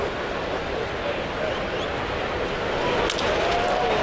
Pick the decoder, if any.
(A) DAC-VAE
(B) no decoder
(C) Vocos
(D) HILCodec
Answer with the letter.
B